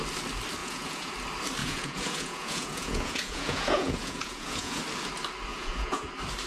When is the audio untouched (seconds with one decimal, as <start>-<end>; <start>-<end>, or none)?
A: 0.0-0.6; 1.1-1.6; 4.8-5.5; 6.1-6.5